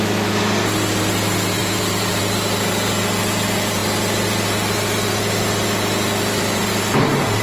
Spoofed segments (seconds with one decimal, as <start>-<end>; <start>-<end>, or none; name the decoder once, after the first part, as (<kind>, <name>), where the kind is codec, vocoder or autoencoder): 1.6-2.2 (vocoder, BigVGAN v2)